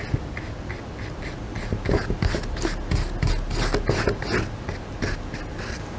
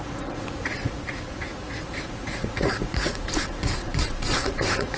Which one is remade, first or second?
second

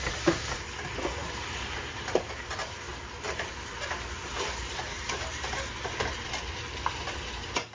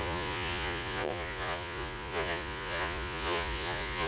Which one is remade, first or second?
second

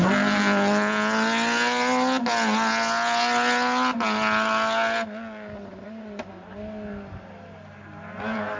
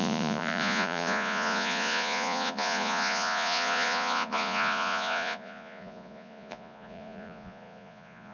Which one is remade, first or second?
second